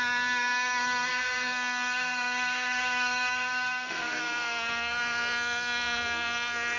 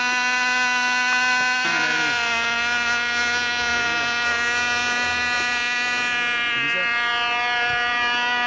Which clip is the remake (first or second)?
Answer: first